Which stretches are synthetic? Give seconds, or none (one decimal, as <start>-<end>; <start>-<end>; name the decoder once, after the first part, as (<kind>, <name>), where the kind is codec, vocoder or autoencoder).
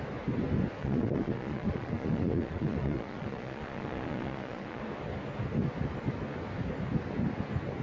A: 0.8-4.8 (vocoder, Vocos)